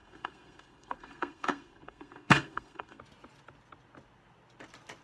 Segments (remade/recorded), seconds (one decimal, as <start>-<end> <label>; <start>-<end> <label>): 0.0-3.0 remade; 3.0-5.0 recorded